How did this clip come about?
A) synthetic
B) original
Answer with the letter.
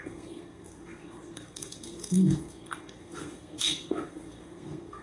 A